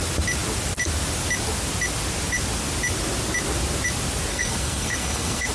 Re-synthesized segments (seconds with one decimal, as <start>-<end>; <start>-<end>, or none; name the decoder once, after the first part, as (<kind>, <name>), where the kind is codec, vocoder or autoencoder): 4.3-5.5 (codec, SNAC)